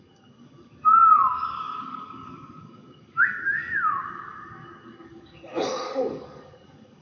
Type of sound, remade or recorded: remade